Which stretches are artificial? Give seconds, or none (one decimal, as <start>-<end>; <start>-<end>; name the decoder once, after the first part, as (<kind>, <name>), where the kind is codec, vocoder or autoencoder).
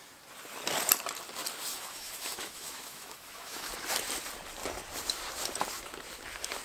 1.7-3.7 (autoencoder, DAC-VAE)